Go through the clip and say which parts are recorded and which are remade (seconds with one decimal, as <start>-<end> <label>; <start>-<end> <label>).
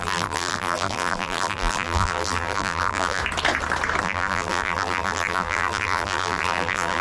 0.0-3.2 remade; 3.2-4.0 recorded; 4.0-7.0 remade